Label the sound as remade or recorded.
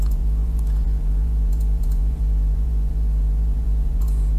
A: remade